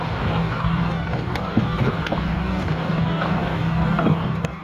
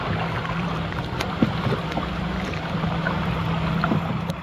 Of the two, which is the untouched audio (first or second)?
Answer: second